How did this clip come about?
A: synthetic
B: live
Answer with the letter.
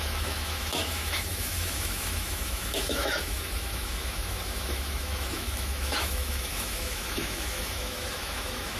A